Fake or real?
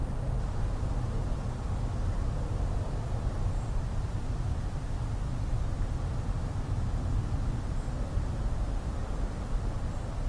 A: real